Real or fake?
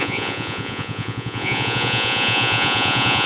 fake